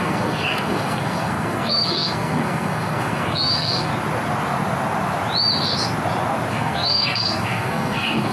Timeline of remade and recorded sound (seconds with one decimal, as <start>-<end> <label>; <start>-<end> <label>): 0.0-3.9 remade; 3.9-6.5 recorded; 6.5-8.3 remade